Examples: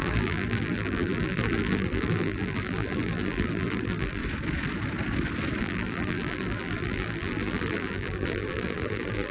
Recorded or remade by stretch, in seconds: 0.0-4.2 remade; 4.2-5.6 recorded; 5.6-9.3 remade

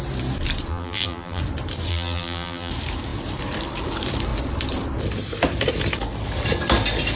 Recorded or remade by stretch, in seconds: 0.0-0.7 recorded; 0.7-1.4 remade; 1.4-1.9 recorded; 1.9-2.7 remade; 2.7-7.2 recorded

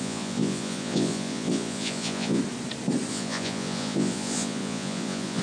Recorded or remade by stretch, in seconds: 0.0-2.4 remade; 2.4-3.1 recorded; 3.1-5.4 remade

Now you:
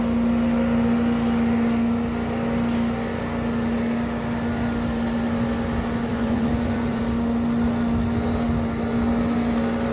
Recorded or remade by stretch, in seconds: 0.0-6.1 recorded; 6.1-7.0 remade; 7.0-9.9 recorded

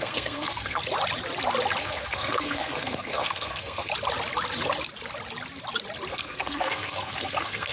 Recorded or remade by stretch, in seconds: 0.0-0.8 remade; 0.8-1.8 recorded; 1.8-3.9 remade; 3.9-6.1 recorded; 6.1-7.7 remade

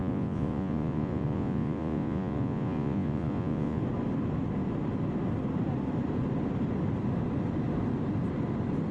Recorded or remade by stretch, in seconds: 0.0-3.8 remade; 3.8-8.9 recorded

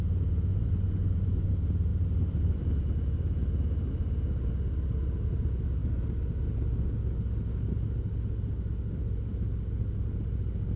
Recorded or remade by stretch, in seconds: 0.0-0.5 recorded; 0.5-1.5 remade; 1.5-10.8 recorded